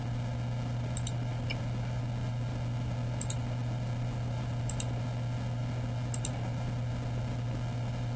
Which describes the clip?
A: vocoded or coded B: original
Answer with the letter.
B